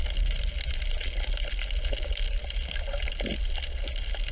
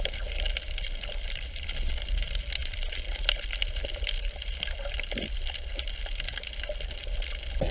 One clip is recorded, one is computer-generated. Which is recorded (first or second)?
first